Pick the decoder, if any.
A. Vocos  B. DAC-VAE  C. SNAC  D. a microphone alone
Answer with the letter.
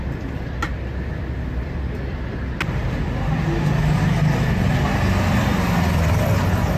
D